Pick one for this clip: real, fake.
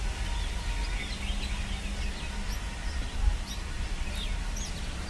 real